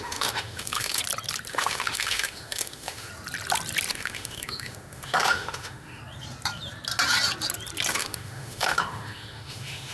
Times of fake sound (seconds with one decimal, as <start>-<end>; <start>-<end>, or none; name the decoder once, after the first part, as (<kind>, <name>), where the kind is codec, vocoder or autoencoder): 0.0-1.0 (autoencoder, DAC-VAE); 1.5-3.1; 3.9-6.0; 7.9-9.9